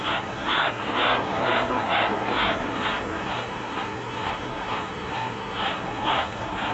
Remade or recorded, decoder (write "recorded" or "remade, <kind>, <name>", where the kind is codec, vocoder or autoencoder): remade, codec, SNAC